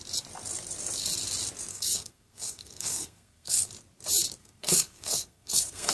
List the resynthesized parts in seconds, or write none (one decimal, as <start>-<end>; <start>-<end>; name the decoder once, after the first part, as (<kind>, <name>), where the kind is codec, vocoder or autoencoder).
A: 1.7-3.7 (codec, SNAC); 4.4-5.9